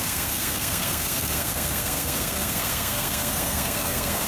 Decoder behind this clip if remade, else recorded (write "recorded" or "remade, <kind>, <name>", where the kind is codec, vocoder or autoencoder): remade, codec, SNAC